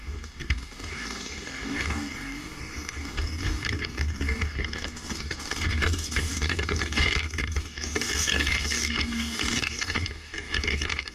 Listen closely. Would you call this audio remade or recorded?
remade